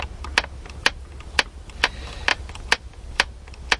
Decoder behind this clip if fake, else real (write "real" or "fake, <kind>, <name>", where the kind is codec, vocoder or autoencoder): real